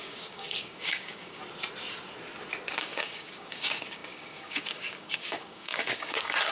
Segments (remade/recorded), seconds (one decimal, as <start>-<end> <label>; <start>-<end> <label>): 0.0-1.4 remade; 1.4-2.8 recorded; 2.8-6.5 remade